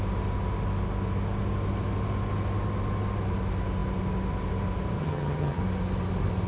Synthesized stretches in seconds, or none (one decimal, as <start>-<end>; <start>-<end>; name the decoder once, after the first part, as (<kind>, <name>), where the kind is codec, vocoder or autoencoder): 5.0-5.6 (vocoder, HiFi-GAN)

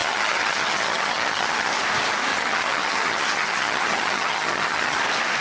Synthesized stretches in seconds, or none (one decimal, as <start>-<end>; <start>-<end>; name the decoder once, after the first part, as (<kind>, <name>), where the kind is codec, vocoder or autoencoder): 0.0-1.7 (vocoder, HiFi-GAN); 2.3-5.0

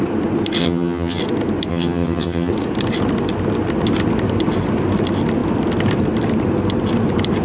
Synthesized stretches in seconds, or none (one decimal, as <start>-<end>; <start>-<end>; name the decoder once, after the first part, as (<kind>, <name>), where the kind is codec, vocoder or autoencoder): 0.6-1.2 (vocoder, HiFi-GAN); 1.7-2.5

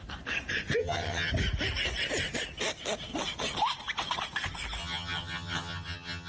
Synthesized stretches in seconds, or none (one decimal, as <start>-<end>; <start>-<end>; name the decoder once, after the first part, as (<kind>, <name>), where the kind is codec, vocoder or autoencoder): 0.8-1.3 (vocoder, HiFi-GAN); 4.8-6.3

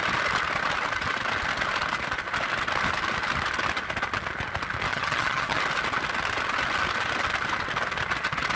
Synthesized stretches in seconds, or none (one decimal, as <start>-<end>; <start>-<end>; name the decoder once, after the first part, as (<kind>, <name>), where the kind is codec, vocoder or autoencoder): 4.9-5.6 (vocoder, HiFi-GAN)